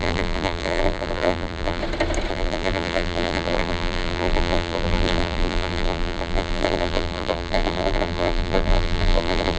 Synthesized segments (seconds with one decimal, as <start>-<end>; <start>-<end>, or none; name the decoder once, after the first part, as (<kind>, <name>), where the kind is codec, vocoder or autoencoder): 0.0-1.8 (vocoder, BigVGAN v2); 2.3-9.6